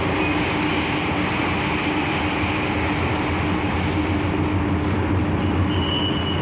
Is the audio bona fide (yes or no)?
yes